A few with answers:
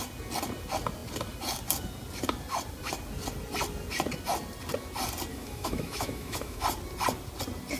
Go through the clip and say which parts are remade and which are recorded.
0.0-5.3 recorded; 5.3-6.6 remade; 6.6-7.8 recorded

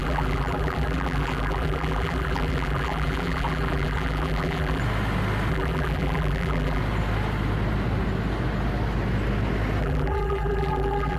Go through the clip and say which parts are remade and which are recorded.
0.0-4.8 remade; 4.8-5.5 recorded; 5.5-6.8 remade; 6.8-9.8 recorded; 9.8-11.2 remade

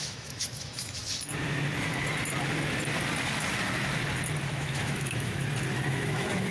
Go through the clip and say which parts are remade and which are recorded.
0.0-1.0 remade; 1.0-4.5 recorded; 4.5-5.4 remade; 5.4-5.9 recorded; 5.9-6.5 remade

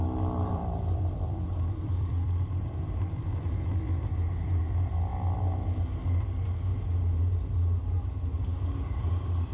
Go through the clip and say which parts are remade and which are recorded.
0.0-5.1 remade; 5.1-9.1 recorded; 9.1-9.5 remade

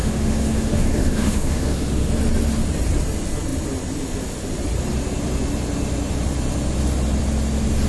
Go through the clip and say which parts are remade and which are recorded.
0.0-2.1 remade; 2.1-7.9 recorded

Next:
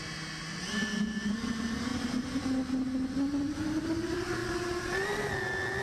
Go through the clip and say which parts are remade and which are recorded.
0.0-5.8 recorded

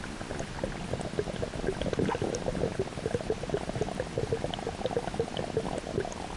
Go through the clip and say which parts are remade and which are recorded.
0.0-6.4 recorded